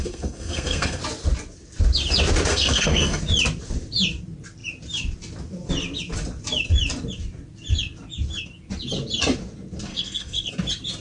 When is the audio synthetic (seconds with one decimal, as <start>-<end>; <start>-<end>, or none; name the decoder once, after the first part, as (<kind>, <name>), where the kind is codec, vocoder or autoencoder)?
0.0-1.0 (codec, SNAC); 2.5-3.2; 9.9-10.5